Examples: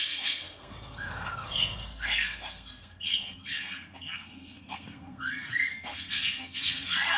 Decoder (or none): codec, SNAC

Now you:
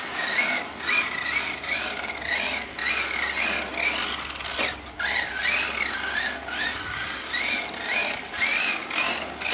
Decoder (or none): none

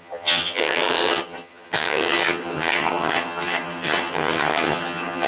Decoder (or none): vocoder, HiFi-GAN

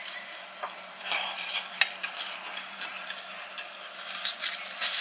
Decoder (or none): vocoder, BigVGAN v2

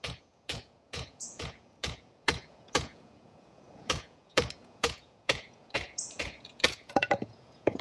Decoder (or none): vocoder, Vocos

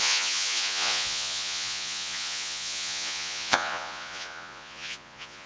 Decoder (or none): vocoder, Vocos